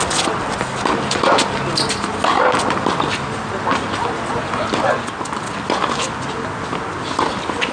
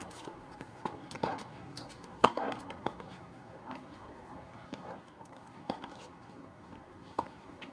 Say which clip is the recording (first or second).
first